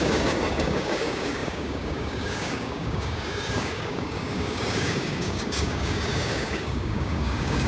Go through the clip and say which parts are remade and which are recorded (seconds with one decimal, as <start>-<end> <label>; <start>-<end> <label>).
0.0-7.7 remade